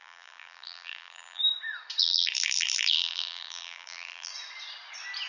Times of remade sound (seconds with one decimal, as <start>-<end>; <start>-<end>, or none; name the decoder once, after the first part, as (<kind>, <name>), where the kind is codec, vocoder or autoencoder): 0.0-1.4 (vocoder, BigVGAN v2); 2.0-4.3

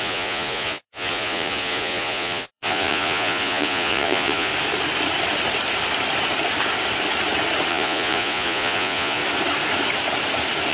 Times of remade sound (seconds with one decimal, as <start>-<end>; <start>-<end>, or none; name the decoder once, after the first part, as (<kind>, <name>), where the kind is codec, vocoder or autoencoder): 0.0-4.5 (vocoder, Vocos); 7.7-9.2

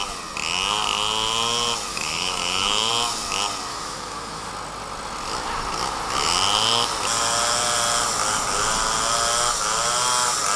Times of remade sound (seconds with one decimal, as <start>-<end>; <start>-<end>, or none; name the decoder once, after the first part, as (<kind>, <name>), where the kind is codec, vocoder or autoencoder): 1.9-2.9 (autoencoder, DAC-VAE); 3.7-4.5

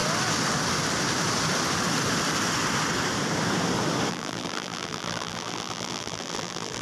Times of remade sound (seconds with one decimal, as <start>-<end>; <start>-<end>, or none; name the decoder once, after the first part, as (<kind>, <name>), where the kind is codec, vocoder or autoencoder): 4.1-6.8 (vocoder, BigVGAN v2)

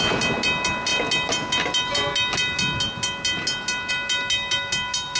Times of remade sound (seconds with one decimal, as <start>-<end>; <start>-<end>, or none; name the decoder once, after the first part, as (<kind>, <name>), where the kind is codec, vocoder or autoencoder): none

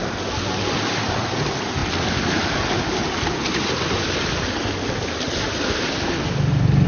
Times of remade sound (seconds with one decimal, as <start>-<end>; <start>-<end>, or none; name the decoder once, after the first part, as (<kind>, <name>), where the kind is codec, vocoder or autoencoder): none